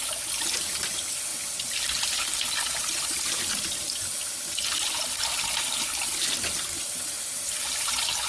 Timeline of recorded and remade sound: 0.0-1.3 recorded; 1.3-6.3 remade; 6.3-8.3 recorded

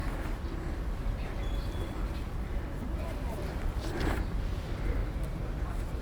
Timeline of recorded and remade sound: 0.0-0.9 recorded; 0.9-5.0 remade; 5.0-5.6 recorded; 5.6-6.0 remade

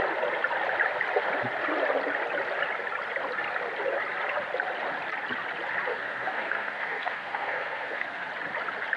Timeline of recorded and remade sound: 0.0-5.9 recorded; 5.9-8.3 remade; 8.3-9.0 recorded

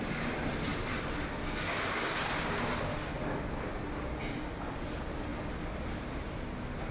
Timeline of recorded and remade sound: 0.0-5.3 recorded; 5.3-6.3 remade; 6.3-6.9 recorded

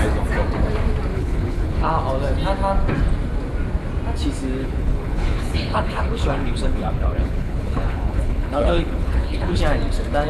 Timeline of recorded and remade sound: 0.0-1.1 recorded; 1.1-1.9 remade; 1.9-4.6 recorded; 4.6-9.6 remade; 9.6-10.3 recorded